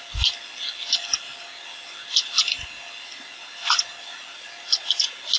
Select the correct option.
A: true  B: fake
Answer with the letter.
A